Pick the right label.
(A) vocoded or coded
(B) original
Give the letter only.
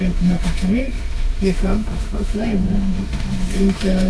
A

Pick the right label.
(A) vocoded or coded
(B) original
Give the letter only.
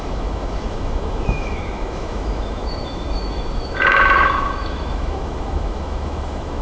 A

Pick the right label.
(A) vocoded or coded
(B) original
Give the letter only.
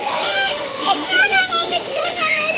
A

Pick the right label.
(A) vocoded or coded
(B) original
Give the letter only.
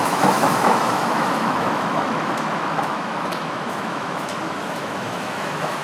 A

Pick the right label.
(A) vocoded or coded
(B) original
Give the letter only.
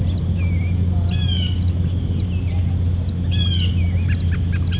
B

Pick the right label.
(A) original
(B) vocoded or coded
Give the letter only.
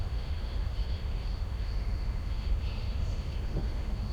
B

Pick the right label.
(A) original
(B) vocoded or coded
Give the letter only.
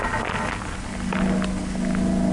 A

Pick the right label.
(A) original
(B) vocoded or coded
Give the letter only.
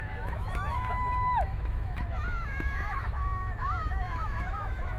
B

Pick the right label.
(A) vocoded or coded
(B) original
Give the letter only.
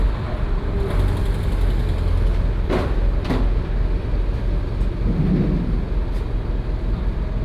B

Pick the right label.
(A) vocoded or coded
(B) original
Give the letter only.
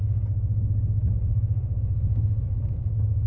B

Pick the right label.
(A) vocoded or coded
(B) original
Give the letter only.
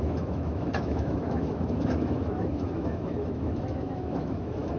A